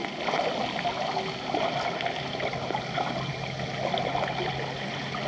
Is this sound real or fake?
real